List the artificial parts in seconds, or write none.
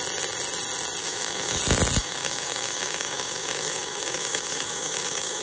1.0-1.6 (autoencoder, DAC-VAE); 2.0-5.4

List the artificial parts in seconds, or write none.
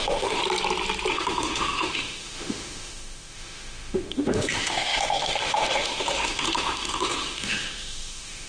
0.0-0.4 (autoencoder, DAC-VAE); 1.1-8.5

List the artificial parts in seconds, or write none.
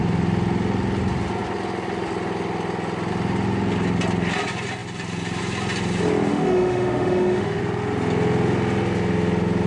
6.3-7.6 (autoencoder, DAC-VAE)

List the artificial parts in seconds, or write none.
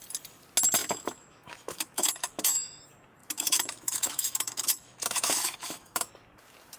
0.8-2.8 (autoencoder, DAC-VAE); 3.2-6.1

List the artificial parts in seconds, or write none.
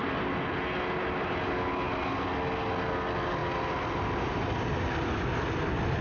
none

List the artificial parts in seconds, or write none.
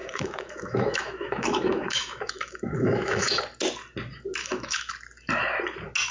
0.0-3.4 (autoencoder, DAC-VAE); 4.4-4.9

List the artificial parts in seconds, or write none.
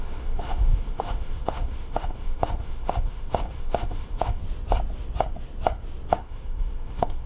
0.0-4.4 (autoencoder, DAC-VAE); 6.1-7.3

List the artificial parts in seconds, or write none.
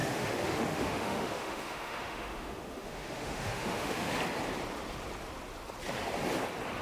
0.0-4.1 (autoencoder, DAC-VAE)